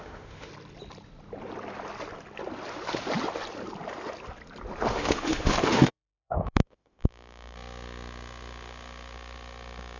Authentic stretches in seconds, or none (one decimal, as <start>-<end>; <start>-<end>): 0.5-4.9